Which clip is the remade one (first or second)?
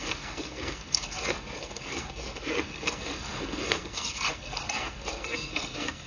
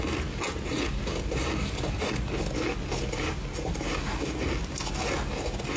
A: first